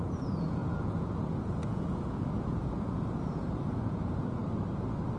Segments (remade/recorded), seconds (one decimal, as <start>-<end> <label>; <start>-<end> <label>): 0.0-4.4 remade; 4.4-5.2 recorded